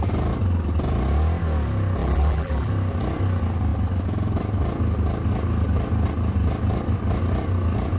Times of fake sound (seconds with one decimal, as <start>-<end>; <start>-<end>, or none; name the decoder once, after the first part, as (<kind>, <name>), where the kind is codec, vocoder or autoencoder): 2.0-2.7 (vocoder, BigVGAN v2)